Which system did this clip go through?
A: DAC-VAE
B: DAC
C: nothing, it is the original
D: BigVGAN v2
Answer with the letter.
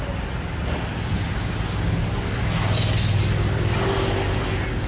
C